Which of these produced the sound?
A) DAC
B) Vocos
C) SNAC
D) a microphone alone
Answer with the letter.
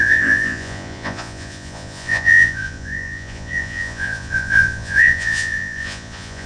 B